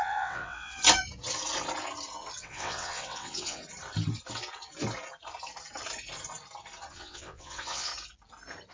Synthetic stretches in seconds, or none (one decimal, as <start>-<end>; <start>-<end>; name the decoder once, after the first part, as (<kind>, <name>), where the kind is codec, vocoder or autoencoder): 0.0-0.8 (vocoder, WaveNeXt); 2.4-3.6; 6.9-7.9